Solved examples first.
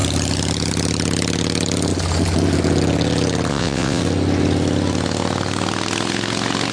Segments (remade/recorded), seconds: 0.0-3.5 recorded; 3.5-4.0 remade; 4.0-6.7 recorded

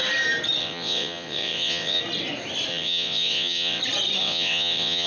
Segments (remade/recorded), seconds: 0.0-0.6 recorded; 0.6-2.0 remade; 2.0-2.7 recorded; 2.7-3.8 remade; 3.8-4.2 recorded; 4.2-5.1 remade

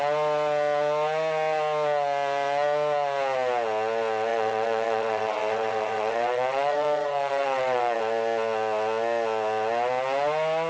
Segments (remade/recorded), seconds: 0.0-4.3 recorded; 4.3-8.0 remade; 8.0-10.7 recorded

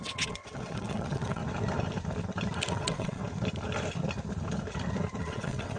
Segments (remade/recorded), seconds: 0.0-1.4 remade; 1.4-2.7 recorded; 2.7-3.2 remade; 3.2-5.2 recorded; 5.2-5.8 remade

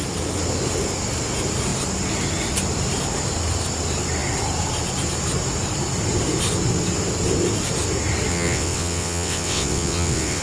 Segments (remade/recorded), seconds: 0.0-8.3 recorded; 8.3-10.4 remade

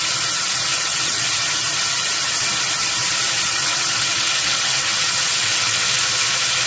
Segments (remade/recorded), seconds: 0.0-0.7 recorded; 0.7-1.2 remade; 1.2-3.5 recorded; 3.5-6.0 remade; 6.0-6.7 recorded

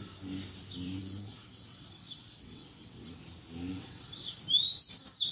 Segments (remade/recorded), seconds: 0.0-1.0 recorded; 1.0-3.2 remade; 3.2-3.7 recorded; 3.7-4.4 remade; 4.4-5.3 recorded